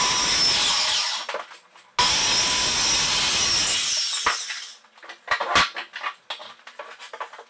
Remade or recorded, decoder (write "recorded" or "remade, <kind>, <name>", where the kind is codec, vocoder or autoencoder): recorded